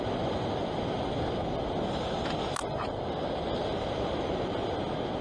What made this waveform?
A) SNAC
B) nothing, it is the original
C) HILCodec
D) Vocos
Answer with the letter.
B